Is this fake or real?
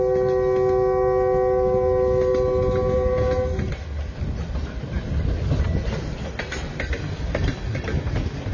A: real